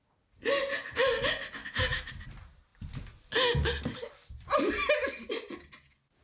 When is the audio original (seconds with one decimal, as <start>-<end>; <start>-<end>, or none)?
0.0-1.6; 2.1-6.2